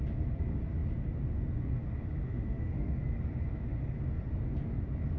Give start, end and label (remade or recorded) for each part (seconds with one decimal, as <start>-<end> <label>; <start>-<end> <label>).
0.0-2.2 recorded; 2.2-3.0 remade; 3.0-5.2 recorded